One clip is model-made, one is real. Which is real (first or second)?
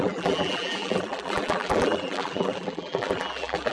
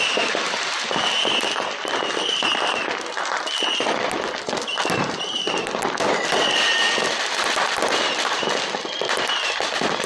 second